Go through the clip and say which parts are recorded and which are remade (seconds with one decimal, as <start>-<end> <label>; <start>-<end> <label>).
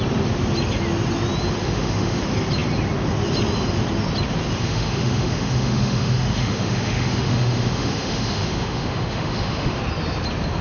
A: 0.0-1.6 recorded; 1.6-2.2 remade; 2.2-4.6 recorded; 4.6-9.8 remade; 9.8-10.6 recorded